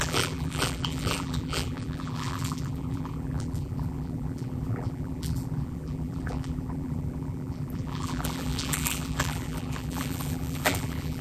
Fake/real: fake